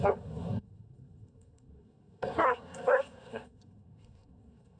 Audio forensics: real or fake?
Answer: fake